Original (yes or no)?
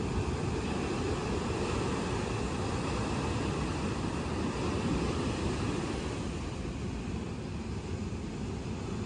yes